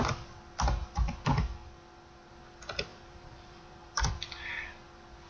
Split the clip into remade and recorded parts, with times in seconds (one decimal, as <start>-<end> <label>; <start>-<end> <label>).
0.0-2.9 recorded; 2.9-4.1 remade; 4.1-5.3 recorded